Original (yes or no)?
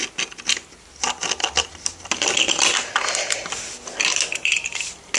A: yes